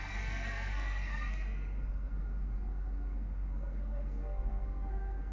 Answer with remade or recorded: remade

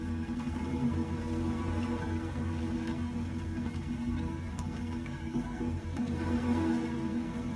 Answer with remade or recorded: remade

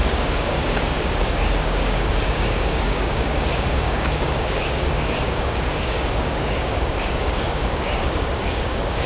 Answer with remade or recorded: remade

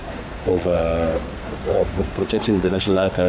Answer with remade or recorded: remade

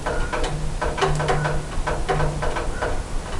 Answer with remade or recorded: recorded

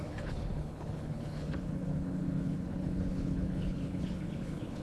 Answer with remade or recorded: remade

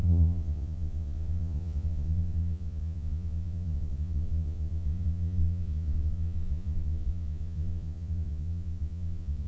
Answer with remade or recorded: remade